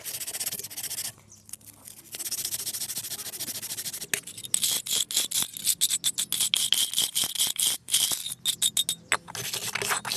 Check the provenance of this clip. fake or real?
real